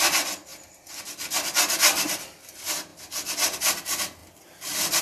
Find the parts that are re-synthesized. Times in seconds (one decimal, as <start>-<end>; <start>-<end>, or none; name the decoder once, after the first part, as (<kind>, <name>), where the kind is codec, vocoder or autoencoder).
0.5-1.0 (vocoder, BigVGAN v2); 4.2-5.0